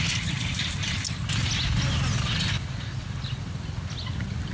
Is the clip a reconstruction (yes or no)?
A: no